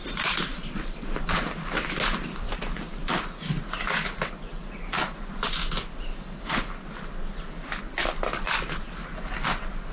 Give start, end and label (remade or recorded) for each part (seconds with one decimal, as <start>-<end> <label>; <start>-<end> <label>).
0.0-5.6 recorded; 5.6-6.4 remade; 6.4-8.0 recorded; 8.0-9.0 remade; 9.0-9.9 recorded